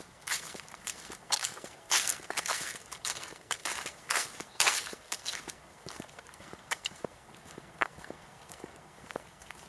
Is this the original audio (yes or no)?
no